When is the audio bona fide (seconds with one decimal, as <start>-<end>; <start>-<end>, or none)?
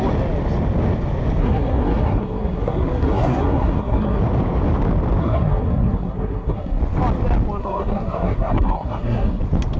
0.0-1.4; 4.2-5.2; 6.8-7.6; 9.4-9.8